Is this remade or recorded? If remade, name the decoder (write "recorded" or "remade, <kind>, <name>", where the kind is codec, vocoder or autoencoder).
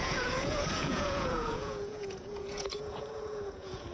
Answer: remade, vocoder, Vocos